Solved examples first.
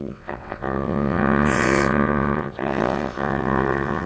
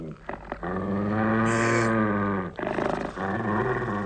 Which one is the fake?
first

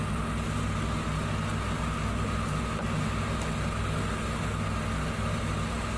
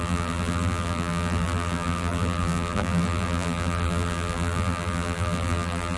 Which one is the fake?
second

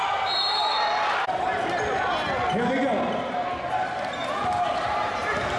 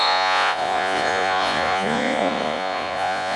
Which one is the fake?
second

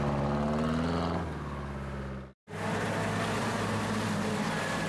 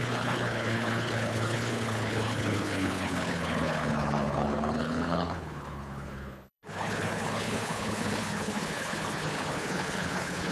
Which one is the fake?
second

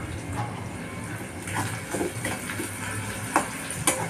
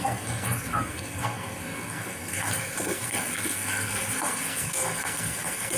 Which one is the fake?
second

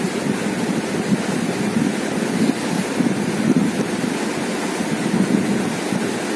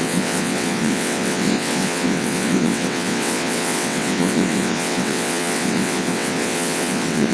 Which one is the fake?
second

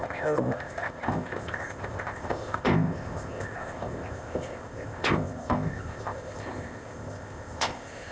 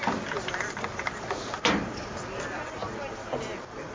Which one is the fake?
first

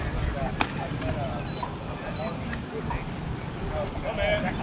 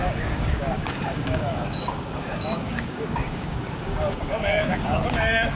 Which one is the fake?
second